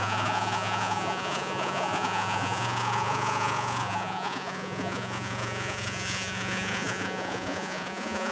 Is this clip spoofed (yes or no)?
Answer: yes